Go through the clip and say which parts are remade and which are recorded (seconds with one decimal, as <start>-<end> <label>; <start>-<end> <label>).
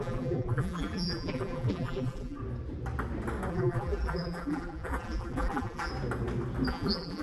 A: 0.0-2.4 remade; 2.4-3.5 recorded; 3.5-5.9 remade; 5.9-6.7 recorded; 6.7-7.2 remade